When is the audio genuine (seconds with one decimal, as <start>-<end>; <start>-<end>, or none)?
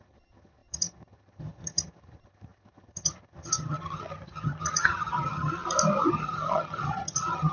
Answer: 5.6-6.1